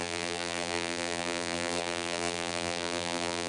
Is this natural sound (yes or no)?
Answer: no